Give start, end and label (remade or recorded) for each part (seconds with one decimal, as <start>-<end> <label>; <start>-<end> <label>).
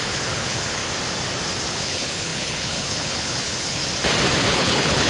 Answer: 0.0-0.8 remade; 0.8-1.7 recorded; 1.7-3.8 remade; 3.8-4.5 recorded; 4.5-5.1 remade